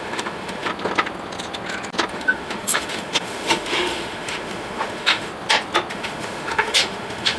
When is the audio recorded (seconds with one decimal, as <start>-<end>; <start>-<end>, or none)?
0.7-2.1; 5.3-5.9

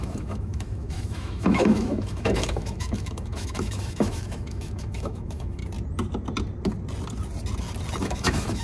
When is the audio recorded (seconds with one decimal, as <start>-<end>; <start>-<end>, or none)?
5.6-8.0

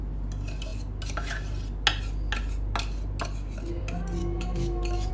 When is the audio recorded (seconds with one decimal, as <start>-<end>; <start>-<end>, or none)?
0.0-4.2

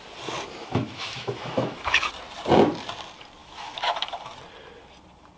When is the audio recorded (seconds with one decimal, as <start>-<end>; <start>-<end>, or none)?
0.0-0.6; 2.1-3.4; 4.3-5.4

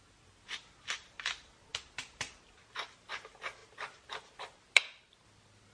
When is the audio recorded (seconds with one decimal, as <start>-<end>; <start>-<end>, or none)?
0.0-5.7

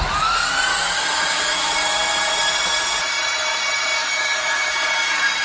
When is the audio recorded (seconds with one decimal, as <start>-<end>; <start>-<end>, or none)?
0.0-0.7; 1.7-4.0; 4.7-5.4

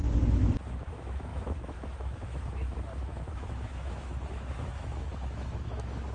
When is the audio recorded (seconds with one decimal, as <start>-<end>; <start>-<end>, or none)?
0.0-0.9